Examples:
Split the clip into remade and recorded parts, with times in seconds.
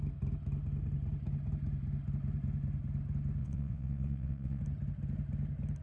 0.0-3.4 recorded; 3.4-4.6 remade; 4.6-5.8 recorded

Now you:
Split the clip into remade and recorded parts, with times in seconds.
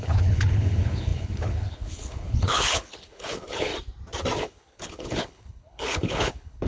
0.0-3.7 remade; 3.7-4.4 recorded; 4.4-6.7 remade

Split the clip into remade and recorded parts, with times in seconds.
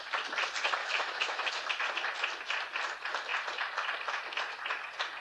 0.0-0.8 recorded; 0.8-1.5 remade; 1.5-5.2 recorded